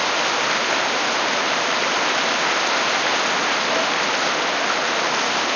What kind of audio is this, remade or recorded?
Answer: recorded